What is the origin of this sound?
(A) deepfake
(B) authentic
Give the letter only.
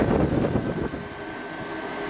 B